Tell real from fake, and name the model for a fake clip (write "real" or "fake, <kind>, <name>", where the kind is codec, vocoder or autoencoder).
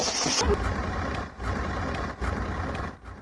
real